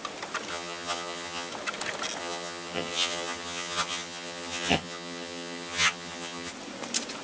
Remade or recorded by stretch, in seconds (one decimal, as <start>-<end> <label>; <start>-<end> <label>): 0.0-0.5 recorded; 0.5-1.5 remade; 1.5-2.2 recorded; 2.2-6.5 remade; 6.5-7.2 recorded